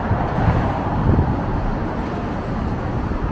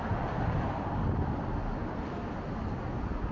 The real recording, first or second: second